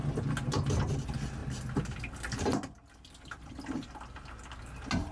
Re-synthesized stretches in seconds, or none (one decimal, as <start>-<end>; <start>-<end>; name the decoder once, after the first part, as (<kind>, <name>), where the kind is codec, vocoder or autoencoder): none